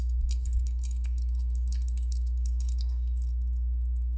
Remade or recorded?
remade